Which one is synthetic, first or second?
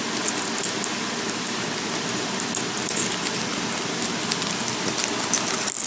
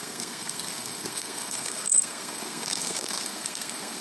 second